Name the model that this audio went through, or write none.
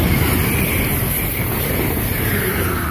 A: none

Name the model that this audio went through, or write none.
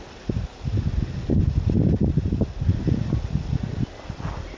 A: none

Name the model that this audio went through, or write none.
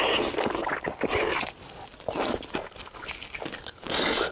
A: none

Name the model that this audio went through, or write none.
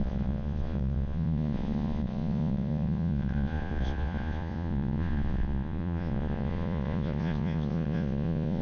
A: vocoder, Vocos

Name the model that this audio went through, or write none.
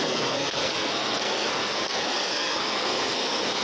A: codec, SNAC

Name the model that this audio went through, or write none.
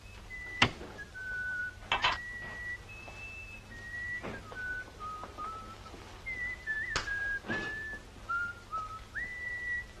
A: none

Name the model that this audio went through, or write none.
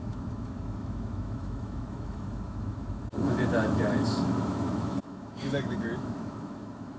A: autoencoder, DAC-VAE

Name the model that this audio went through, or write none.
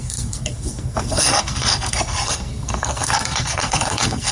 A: codec, SNAC